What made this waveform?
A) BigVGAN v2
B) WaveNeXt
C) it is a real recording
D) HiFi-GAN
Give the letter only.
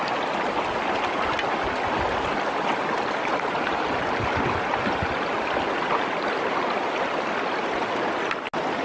C